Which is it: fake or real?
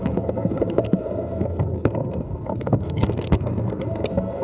fake